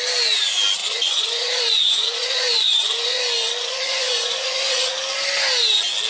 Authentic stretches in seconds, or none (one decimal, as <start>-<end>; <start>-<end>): 0.0-0.8; 3.2-3.6; 4.9-6.1